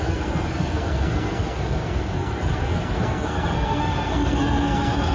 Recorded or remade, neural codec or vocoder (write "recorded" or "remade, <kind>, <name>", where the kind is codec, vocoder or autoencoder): remade, codec, SNAC